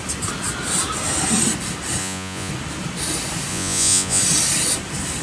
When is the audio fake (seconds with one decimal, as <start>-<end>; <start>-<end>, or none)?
2.0-2.5; 3.5-4.2